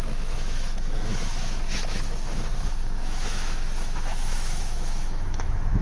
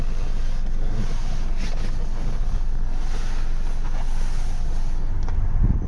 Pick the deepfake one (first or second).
first